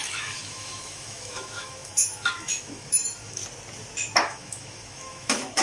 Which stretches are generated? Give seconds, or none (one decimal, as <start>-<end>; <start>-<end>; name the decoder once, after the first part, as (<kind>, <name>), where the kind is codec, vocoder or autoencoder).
0.0-3.4 (autoencoder, DAC-VAE); 4.2-5.6